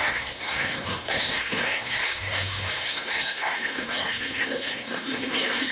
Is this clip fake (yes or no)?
yes